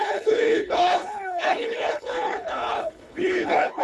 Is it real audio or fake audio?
fake